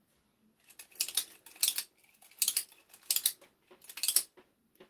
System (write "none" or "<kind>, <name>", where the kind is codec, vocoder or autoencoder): none